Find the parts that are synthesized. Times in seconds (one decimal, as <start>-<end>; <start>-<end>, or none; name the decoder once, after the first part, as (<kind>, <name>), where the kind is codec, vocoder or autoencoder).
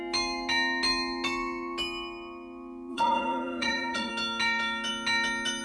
2.9-4.1 (vocoder, Vocos)